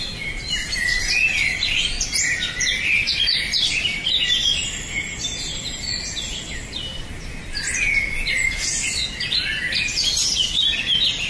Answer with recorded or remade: recorded